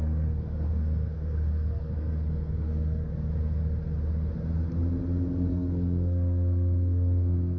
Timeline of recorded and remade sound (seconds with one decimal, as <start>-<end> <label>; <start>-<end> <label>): 0.0-3.1 remade; 3.1-5.5 recorded; 5.5-7.6 remade